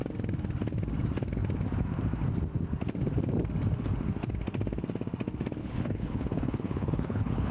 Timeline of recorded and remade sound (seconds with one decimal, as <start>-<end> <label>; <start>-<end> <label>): 0.0-5.6 recorded; 5.6-7.5 remade